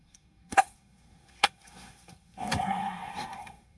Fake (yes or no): yes